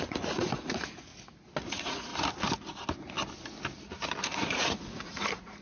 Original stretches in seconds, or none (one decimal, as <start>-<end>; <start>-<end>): 1.1-1.7; 2.1-4.2